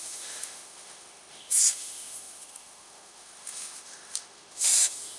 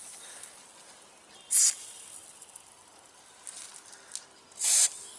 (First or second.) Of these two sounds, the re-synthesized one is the first